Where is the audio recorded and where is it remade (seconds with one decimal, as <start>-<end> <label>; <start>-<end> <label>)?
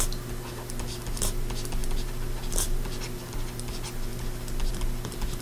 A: 0.0-5.4 recorded